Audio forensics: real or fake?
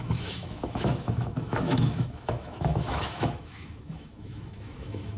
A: fake